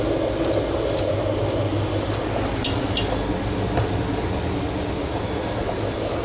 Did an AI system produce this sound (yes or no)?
no